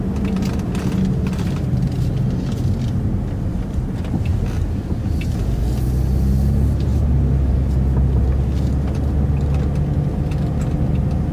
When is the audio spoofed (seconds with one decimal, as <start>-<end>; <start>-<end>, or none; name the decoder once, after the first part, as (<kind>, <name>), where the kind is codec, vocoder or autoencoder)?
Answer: none